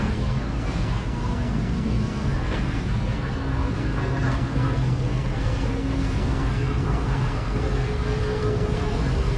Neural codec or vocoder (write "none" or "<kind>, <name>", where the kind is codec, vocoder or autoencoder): codec, SNAC